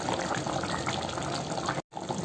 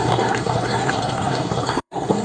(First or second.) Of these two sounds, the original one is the first